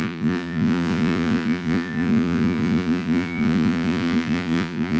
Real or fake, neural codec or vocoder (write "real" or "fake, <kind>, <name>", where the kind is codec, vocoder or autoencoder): fake, vocoder, Vocos